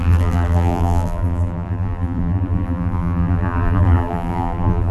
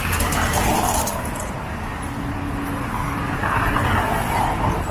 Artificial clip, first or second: first